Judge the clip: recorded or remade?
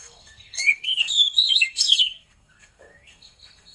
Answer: remade